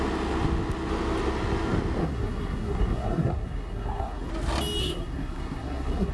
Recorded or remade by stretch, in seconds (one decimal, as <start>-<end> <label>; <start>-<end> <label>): 0.0-2.0 recorded; 2.0-4.3 remade; 4.3-4.8 recorded; 4.8-6.1 remade